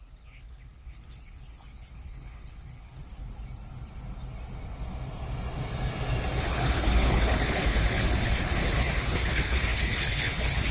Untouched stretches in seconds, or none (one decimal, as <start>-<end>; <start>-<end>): 3.0-6.4